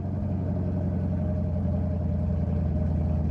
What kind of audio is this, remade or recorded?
recorded